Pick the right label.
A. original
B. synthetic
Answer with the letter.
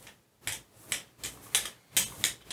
A